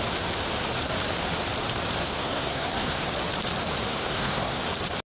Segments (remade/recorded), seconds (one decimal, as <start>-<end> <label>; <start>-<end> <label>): 0.0-2.0 recorded; 2.0-3.0 remade; 3.0-3.9 recorded; 3.9-4.6 remade; 4.6-5.0 recorded